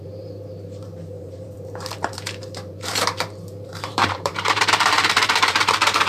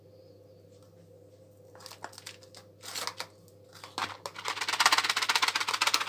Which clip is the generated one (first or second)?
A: first